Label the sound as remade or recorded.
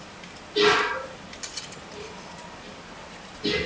recorded